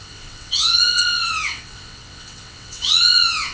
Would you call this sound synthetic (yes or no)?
yes